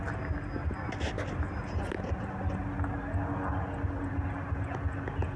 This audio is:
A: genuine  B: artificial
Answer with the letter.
A